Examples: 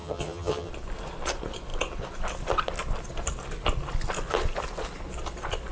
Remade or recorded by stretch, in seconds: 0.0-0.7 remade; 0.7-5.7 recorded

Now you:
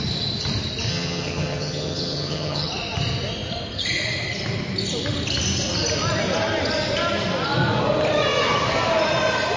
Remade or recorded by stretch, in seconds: 0.0-0.9 recorded; 0.9-2.7 remade; 2.7-9.6 recorded

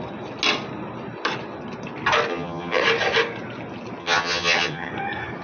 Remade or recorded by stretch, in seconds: 0.0-2.3 recorded; 2.3-2.8 remade; 2.8-4.0 recorded; 4.0-4.9 remade; 4.9-5.4 recorded

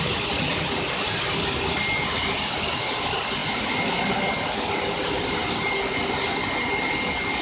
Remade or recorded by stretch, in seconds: 0.0-7.4 recorded

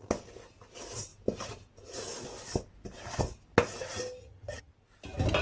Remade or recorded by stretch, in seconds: 0.0-4.2 recorded; 4.2-4.7 remade; 4.7-5.4 recorded